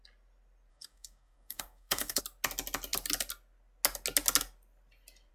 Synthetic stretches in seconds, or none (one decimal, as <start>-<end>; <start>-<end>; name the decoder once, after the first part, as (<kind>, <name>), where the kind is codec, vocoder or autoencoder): 0.7-2.2 (codec, DAC)

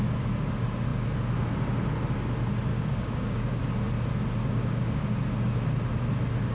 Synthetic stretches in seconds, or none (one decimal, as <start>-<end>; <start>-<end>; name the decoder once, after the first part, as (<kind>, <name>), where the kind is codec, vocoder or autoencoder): 2.7-3.6 (codec, DAC); 4.4-5.2

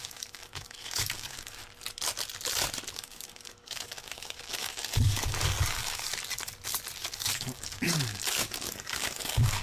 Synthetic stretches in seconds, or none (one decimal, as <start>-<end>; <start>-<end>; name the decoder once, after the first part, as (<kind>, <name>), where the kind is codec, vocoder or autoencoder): 0.0-1.6 (codec, DAC); 2.9-6.1; 7.0-9.6

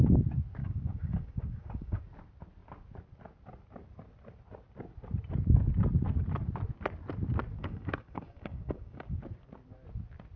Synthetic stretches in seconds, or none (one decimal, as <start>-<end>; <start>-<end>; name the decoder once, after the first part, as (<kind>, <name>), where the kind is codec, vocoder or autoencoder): 0.6-2.0 (codec, DAC); 7.6-9.2

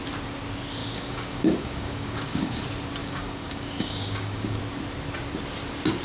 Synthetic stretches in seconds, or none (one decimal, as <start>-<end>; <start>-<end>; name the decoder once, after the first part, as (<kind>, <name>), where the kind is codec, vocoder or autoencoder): 0.8-2.6 (codec, DAC); 3.0-4.6

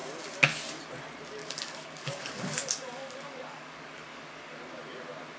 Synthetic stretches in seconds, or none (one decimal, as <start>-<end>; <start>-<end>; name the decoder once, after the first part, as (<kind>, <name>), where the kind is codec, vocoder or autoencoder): 1.4-4.6 (codec, DAC)

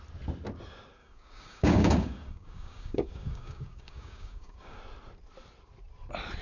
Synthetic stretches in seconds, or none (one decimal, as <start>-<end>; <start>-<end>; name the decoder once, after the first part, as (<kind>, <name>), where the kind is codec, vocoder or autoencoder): 1.0-4.8 (codec, DAC)